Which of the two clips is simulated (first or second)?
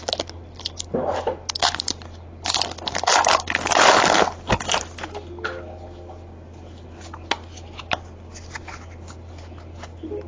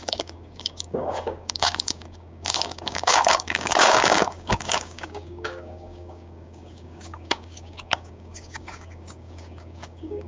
second